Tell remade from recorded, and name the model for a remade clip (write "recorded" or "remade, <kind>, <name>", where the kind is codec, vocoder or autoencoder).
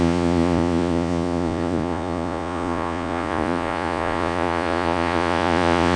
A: remade, vocoder, Vocos